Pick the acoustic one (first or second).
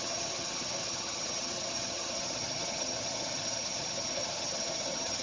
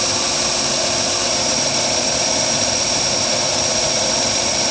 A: second